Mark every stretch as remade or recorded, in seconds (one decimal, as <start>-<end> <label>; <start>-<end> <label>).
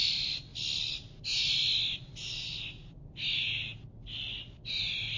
0.0-5.2 recorded